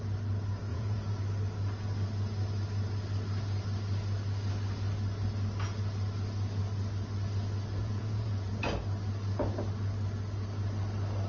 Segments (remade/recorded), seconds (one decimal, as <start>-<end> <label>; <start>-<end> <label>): 0.0-0.7 recorded; 0.7-1.2 remade; 1.2-7.8 recorded; 7.8-8.6 remade; 8.6-11.3 recorded